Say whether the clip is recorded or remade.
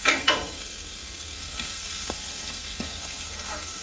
remade